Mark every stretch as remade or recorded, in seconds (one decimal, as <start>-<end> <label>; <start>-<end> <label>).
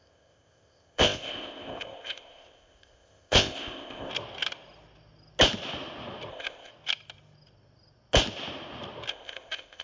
0.0-4.1 remade; 4.1-6.3 recorded; 6.3-6.7 remade; 6.7-9.1 recorded; 9.1-9.8 remade